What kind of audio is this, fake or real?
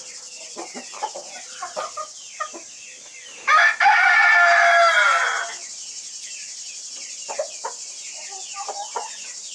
real